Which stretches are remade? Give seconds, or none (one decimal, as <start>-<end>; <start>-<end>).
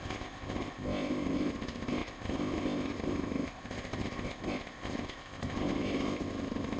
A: 0.0-6.8